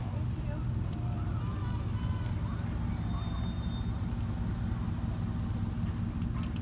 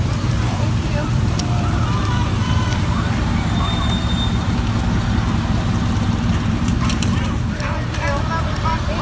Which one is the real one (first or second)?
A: first